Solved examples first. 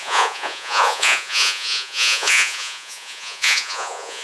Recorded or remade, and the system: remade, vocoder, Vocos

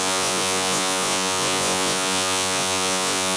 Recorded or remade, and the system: remade, vocoder, Vocos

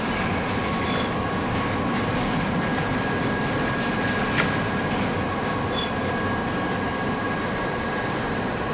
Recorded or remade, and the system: recorded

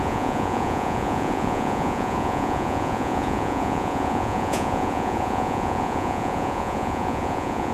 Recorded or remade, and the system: remade, vocoder, Vocos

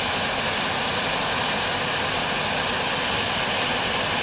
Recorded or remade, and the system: recorded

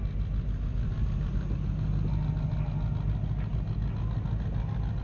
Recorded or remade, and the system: recorded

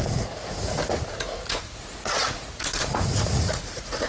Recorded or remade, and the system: remade, vocoder, Vocos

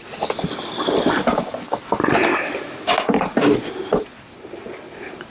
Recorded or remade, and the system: recorded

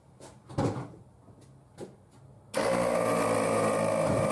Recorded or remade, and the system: recorded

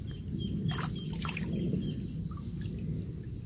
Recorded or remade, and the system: recorded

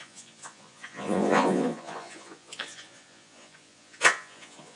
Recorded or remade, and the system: remade, vocoder, Vocos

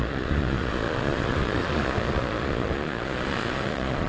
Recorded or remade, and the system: remade, vocoder, Vocos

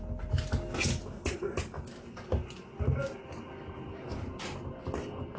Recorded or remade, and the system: recorded